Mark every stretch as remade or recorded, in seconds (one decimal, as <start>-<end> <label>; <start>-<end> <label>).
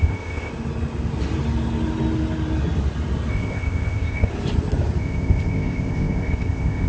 0.0-0.5 remade; 0.5-3.3 recorded; 3.3-4.3 remade; 4.3-5.0 recorded; 5.0-6.9 remade